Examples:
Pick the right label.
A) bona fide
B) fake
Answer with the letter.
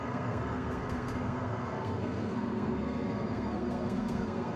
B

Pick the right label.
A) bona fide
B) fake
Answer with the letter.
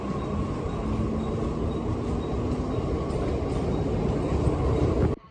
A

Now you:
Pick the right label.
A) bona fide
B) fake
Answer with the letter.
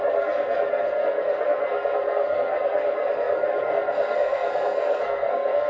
B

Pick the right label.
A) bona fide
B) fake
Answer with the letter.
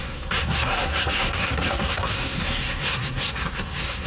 B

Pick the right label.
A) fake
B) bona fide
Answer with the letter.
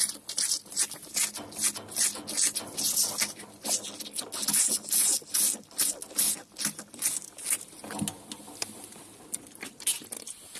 B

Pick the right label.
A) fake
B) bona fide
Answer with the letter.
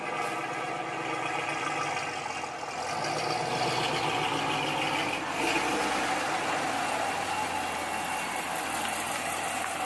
B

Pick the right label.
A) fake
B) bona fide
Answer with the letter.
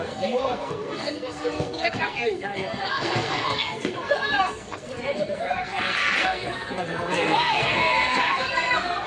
A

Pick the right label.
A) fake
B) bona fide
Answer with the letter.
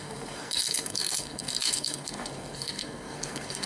A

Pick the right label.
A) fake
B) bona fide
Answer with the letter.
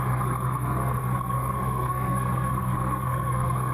A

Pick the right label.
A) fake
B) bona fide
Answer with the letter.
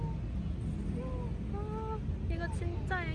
B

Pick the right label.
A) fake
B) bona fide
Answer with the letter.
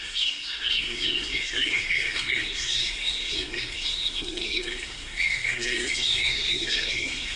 A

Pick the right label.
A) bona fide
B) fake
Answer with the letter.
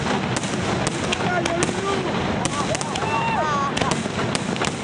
A